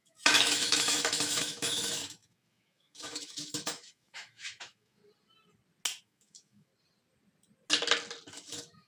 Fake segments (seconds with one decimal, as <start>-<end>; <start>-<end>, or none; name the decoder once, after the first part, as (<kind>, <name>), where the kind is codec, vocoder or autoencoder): 0.0-5.0 (autoencoder, DAC-VAE); 6.0-6.7; 8.3-8.9